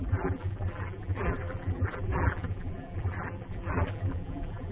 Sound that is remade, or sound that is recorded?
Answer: remade